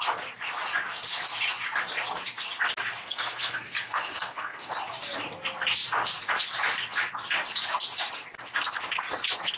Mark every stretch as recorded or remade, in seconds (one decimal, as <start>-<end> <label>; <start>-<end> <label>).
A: 0.0-3.0 recorded; 3.0-4.7 remade; 4.7-9.6 recorded